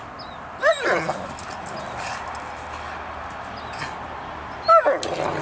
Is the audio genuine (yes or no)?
yes